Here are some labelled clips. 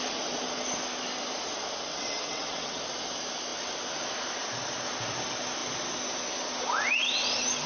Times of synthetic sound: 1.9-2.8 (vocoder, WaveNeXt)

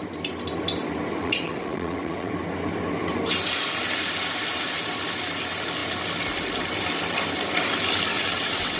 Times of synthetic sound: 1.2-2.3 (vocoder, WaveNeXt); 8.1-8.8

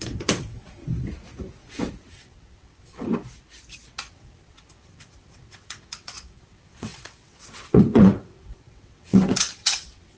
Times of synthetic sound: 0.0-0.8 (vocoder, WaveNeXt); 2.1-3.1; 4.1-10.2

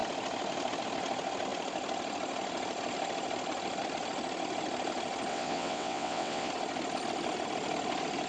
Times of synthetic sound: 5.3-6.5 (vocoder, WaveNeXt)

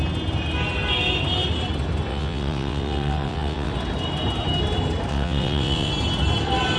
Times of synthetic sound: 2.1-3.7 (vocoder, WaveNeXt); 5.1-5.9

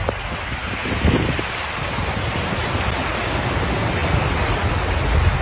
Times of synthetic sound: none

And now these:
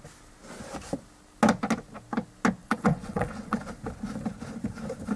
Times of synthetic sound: 2.6-3.6 (vocoder, WaveNeXt)

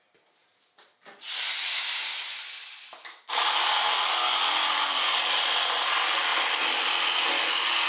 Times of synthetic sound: none